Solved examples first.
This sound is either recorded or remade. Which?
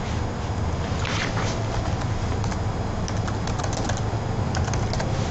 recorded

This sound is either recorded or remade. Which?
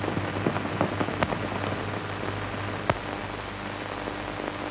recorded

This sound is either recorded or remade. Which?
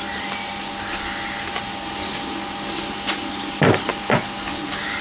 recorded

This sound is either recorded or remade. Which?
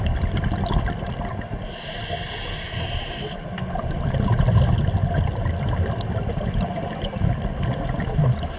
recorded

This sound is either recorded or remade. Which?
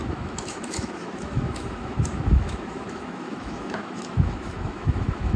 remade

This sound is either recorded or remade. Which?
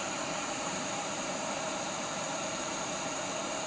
remade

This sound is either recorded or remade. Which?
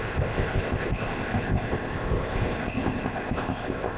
remade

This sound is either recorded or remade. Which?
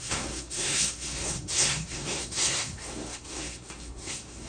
remade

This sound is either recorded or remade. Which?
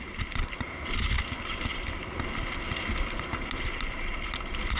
recorded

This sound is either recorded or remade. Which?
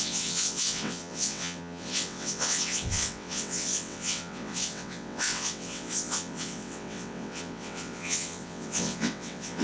remade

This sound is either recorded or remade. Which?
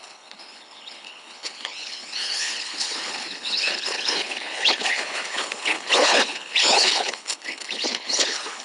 remade